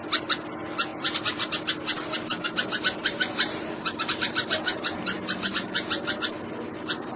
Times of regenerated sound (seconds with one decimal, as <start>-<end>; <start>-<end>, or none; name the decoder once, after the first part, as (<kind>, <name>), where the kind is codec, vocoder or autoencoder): 0.9-1.8 (vocoder, BigVGAN v2); 3.0-6.1